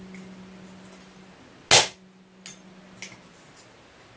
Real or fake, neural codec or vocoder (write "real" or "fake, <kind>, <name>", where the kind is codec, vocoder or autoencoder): real